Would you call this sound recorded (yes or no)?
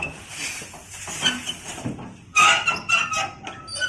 yes